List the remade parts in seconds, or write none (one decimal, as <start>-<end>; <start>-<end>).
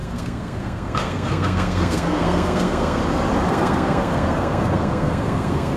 0.0-3.0; 3.5-5.8